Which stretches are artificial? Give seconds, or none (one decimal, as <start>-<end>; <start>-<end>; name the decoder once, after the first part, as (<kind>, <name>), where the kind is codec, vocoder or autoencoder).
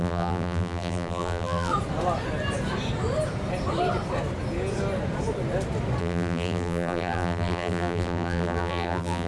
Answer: 0.0-1.7 (vocoder, BigVGAN v2); 6.0-9.3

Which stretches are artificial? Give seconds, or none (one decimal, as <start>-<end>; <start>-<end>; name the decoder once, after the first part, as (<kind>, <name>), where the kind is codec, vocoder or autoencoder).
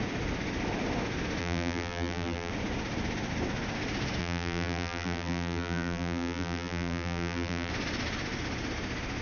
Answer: 1.4-2.5 (vocoder, BigVGAN v2); 4.2-7.7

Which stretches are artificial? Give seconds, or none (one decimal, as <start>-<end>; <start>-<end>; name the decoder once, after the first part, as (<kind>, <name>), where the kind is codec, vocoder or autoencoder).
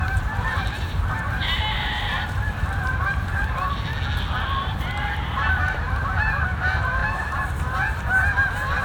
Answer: 0.0-3.9 (vocoder, BigVGAN v2); 4.6-8.8